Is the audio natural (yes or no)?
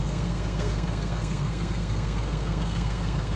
no